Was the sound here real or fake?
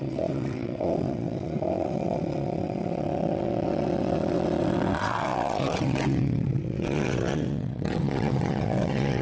fake